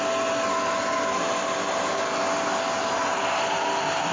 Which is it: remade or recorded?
recorded